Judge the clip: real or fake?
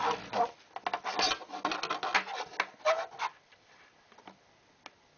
real